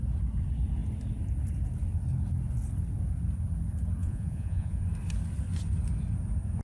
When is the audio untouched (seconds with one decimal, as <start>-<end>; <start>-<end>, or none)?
0.0-4.0; 4.8-6.6